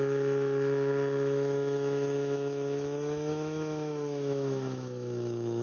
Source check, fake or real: fake